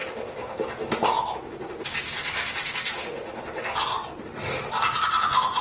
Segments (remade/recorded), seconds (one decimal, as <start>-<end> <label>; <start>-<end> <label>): 0.0-5.6 recorded